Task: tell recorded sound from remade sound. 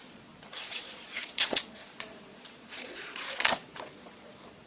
remade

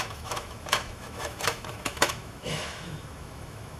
remade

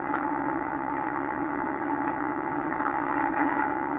remade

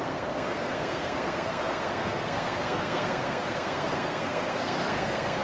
remade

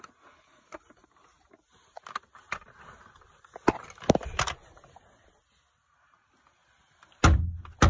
recorded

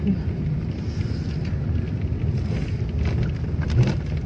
recorded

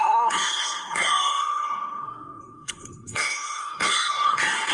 remade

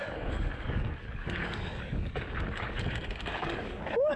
remade